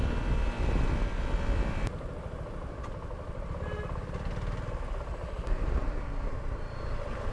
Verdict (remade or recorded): recorded